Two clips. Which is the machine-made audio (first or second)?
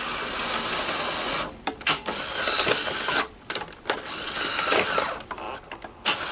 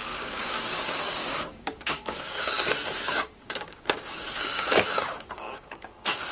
second